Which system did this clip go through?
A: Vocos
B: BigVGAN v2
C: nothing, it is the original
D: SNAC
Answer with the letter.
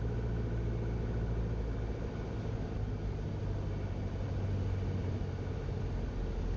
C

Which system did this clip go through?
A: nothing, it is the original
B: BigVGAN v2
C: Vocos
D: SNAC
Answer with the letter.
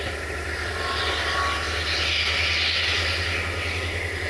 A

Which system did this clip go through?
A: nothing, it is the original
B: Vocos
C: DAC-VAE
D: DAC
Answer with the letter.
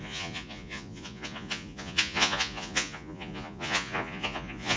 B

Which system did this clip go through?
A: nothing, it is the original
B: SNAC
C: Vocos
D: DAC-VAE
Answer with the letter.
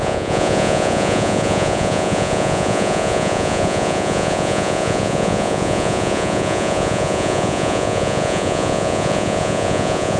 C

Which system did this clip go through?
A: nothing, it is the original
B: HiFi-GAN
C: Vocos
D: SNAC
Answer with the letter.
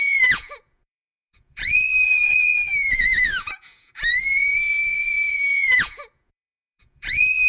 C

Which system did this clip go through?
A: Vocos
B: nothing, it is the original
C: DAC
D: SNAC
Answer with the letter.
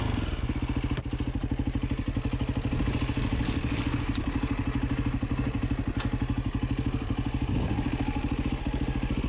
B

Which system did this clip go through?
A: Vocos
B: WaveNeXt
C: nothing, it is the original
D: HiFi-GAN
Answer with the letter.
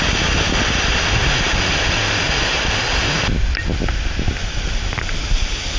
C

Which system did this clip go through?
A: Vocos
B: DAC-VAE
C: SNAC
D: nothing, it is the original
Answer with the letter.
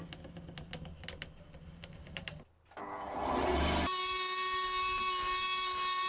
D